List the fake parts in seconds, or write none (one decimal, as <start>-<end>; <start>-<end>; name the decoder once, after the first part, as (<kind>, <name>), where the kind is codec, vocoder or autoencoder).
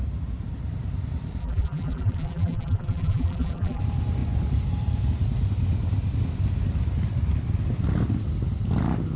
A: 1.4-3.8 (vocoder, BigVGAN v2)